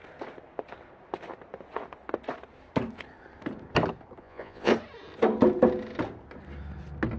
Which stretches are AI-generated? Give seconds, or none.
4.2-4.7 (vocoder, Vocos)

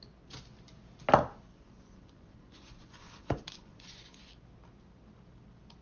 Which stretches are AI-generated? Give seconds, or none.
1.5-4.3 (vocoder, Vocos)

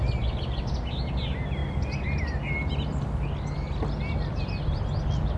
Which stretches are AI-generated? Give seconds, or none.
none

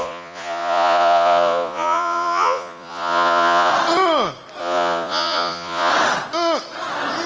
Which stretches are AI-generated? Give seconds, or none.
0.0-3.7 (vocoder, Vocos); 4.6-5.9

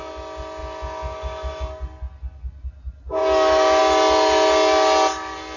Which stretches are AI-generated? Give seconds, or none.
none